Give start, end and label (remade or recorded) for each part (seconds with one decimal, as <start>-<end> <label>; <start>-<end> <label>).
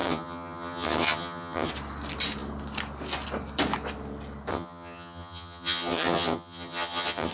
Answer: 0.0-1.7 remade; 1.7-4.5 recorded; 4.5-7.3 remade